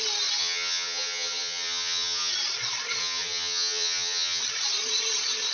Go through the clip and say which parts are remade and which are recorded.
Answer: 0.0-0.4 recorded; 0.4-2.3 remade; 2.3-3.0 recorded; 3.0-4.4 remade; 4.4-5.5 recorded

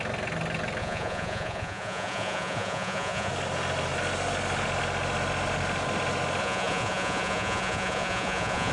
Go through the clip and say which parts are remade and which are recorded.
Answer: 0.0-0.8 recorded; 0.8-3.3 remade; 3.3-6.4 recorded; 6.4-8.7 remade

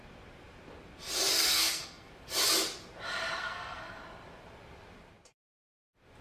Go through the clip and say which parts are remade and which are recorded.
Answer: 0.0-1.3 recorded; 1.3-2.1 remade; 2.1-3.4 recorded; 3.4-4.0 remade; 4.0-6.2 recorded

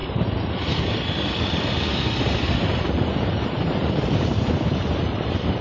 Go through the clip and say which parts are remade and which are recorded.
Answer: 0.0-1.0 remade; 1.0-1.9 recorded; 1.9-5.6 remade